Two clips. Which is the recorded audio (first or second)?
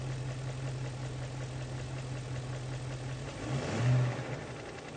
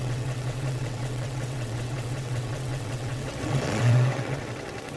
first